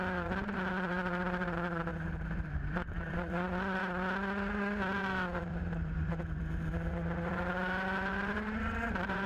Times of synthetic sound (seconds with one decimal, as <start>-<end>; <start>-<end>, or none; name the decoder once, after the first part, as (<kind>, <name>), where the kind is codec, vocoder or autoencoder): 0.0-3.8 (vocoder, BigVGAN v2); 5.0-9.3